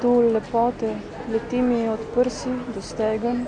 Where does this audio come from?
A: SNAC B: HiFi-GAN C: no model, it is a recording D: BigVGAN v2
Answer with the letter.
C